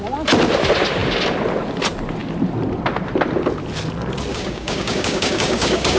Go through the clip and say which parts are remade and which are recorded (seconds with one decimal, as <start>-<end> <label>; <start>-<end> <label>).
0.0-4.3 recorded; 4.3-6.0 remade